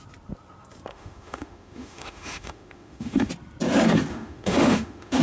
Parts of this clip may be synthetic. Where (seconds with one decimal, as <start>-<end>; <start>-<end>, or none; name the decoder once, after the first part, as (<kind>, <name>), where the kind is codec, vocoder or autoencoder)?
0.9-3.3 (autoencoder, DAC-VAE); 4.1-5.2